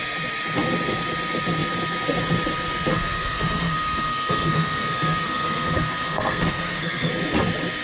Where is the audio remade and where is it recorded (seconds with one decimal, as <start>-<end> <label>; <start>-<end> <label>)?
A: 0.0-2.9 recorded; 2.9-7.1 remade; 7.1-7.8 recorded